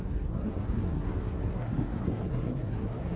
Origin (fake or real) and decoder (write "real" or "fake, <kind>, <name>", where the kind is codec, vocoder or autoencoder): fake, codec, SNAC